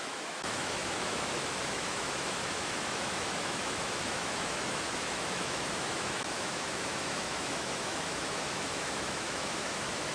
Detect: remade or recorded remade